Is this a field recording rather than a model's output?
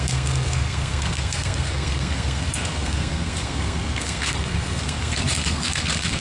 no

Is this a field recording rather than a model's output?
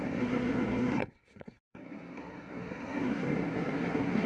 no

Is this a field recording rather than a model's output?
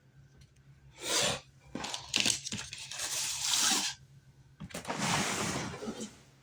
yes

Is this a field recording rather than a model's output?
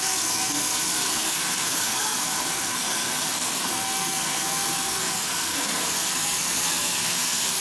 no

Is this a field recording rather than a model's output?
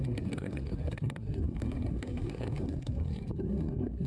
no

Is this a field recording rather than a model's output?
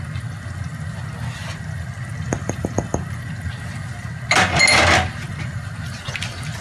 yes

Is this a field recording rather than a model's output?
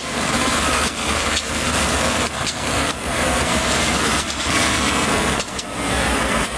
no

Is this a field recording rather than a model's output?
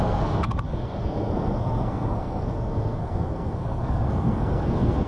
no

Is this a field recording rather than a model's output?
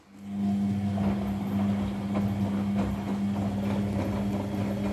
yes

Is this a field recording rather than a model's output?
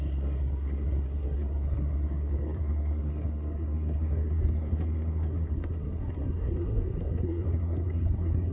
no